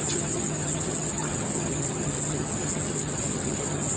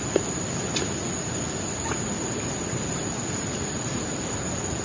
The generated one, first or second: first